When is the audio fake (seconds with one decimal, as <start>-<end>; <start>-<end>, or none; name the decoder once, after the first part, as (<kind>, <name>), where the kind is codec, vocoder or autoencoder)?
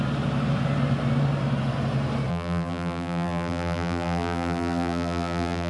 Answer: 2.3-5.7 (vocoder, BigVGAN v2)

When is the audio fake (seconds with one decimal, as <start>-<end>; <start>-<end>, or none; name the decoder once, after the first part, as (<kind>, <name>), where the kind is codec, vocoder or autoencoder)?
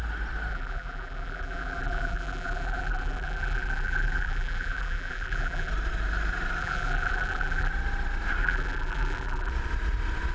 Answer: 0.5-5.7 (vocoder, BigVGAN v2); 6.6-7.7; 8.4-9.5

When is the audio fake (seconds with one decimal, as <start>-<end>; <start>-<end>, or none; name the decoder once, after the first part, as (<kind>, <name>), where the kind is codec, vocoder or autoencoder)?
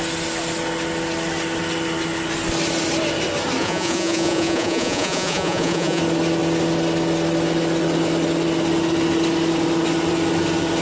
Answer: 3.6-6.0 (vocoder, Vocos)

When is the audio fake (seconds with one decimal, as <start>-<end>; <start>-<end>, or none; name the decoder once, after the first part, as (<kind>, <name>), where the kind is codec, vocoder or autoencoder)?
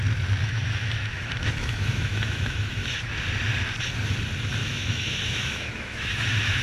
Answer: 0.4-3.1 (autoencoder, DAC-VAE); 4.6-6.6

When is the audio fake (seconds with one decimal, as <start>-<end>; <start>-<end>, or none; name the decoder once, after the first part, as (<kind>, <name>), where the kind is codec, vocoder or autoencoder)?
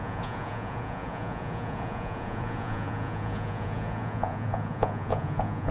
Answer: 0.0-5.7 (vocoder, Vocos)